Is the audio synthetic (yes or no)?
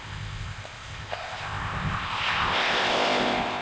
yes